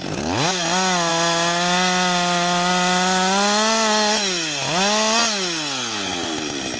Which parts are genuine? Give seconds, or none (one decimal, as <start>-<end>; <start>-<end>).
0.0-6.8